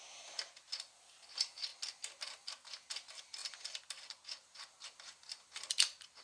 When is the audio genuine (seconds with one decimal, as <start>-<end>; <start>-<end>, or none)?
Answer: 0.0-6.2